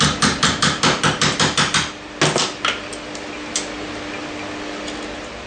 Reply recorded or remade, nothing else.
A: recorded